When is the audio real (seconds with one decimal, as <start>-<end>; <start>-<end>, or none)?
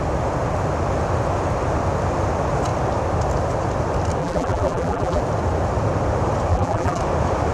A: 0.0-4.2; 5.2-6.5; 7.0-7.5